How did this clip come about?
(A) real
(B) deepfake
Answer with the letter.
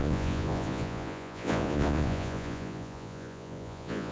B